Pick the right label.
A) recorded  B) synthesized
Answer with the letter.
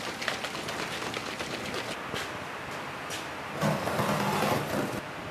A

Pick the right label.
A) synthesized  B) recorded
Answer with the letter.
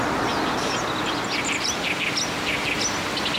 B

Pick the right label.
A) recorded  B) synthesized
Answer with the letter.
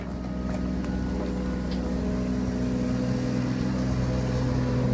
A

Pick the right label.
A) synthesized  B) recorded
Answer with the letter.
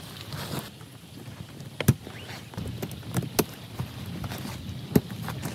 B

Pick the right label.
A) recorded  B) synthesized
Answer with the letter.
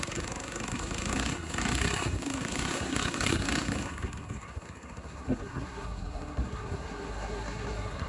B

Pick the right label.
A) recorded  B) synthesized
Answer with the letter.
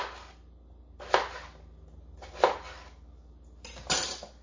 A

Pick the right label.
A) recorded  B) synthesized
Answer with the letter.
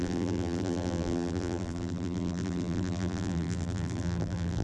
B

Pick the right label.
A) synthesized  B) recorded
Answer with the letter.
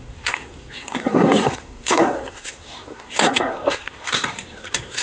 A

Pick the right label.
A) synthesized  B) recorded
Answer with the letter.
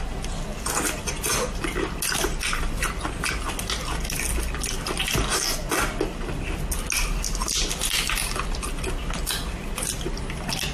B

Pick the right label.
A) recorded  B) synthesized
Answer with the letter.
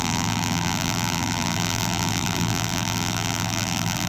B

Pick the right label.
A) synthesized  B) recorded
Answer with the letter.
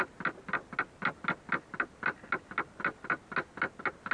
B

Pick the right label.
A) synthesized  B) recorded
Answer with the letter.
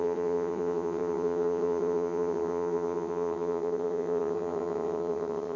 A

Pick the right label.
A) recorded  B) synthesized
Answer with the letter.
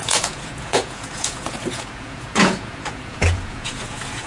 B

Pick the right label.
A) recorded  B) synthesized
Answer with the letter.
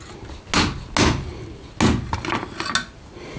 A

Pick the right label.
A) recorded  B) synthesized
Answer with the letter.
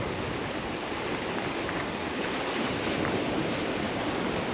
A